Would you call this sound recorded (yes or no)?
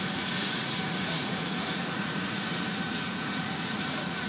no